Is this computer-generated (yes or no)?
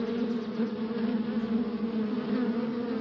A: no